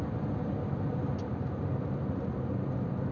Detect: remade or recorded recorded